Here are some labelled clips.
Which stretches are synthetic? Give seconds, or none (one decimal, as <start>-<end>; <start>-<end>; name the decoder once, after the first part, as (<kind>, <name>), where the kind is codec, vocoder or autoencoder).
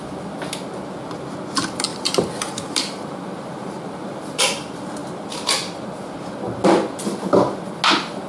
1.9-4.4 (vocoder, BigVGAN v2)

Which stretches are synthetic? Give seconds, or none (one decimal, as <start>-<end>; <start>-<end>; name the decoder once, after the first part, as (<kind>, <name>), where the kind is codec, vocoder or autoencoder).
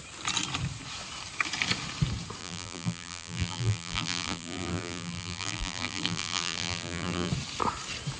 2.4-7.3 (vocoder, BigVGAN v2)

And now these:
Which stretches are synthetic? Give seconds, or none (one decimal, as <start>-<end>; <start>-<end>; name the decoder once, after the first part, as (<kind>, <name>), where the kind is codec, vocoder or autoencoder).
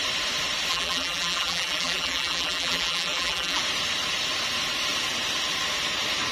0.7-3.6 (vocoder, BigVGAN v2)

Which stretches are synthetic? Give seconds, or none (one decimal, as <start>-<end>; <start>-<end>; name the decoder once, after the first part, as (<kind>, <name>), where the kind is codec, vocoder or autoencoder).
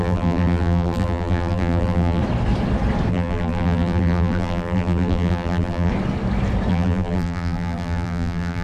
0.0-2.2 (vocoder, BigVGAN v2); 3.1-5.9; 6.7-8.6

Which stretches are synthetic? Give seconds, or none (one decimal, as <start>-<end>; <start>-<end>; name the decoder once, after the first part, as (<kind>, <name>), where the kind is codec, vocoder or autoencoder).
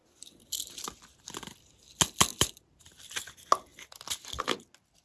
0.0-1.2 (vocoder, BigVGAN v2); 2.3-3.3